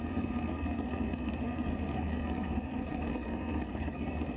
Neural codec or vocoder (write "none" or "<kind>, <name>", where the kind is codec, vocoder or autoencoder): codec, SNAC